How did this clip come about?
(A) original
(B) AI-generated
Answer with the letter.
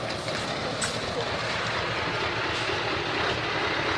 A